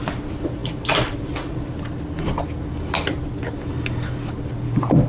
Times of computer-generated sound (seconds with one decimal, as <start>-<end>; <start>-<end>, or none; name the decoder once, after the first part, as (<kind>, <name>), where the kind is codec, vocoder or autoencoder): none